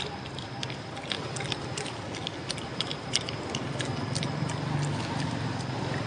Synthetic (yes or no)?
no